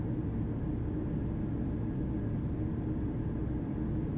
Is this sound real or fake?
real